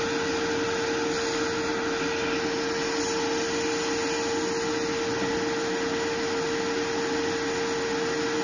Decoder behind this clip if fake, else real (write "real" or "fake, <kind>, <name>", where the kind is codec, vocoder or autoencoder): real